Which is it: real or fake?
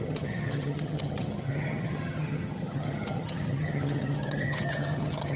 fake